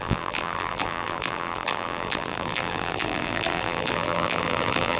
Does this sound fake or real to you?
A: fake